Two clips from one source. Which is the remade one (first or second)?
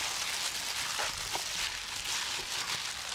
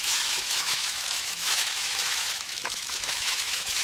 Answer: second